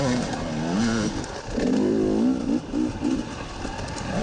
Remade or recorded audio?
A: recorded